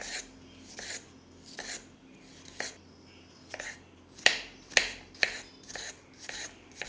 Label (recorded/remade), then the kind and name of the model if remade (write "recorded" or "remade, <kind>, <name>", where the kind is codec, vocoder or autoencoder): remade, vocoder, BigVGAN v2